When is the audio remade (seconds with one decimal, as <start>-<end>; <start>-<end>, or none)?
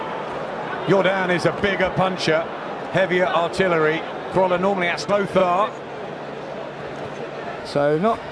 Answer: 7.6-8.3